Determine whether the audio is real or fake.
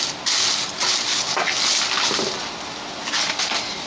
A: real